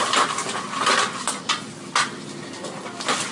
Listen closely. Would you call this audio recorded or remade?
recorded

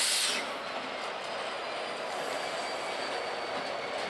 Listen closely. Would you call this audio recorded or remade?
recorded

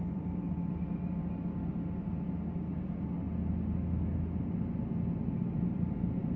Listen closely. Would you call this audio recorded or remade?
recorded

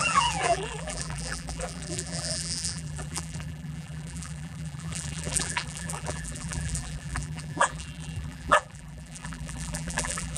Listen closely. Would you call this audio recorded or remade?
remade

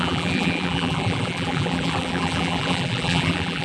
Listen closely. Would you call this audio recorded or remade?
remade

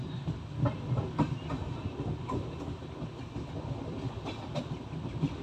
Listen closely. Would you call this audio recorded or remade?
recorded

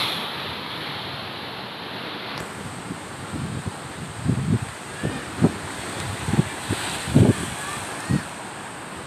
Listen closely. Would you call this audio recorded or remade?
recorded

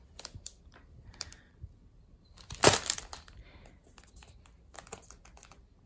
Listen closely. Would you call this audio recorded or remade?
recorded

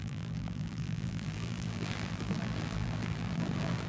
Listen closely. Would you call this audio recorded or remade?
remade